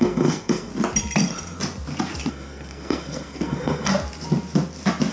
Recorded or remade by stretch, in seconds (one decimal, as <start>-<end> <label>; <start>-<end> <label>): 0.0-0.7 remade; 0.7-2.3 recorded; 2.3-3.9 remade; 3.9-5.1 recorded